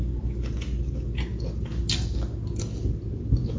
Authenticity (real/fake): real